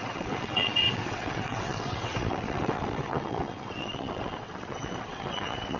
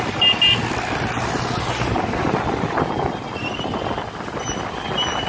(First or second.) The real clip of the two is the second